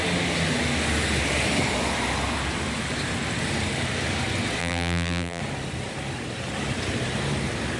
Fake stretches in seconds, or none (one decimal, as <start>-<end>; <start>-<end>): 4.6-5.4